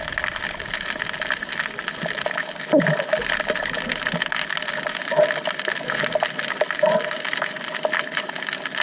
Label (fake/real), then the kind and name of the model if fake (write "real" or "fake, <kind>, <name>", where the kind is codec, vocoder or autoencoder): real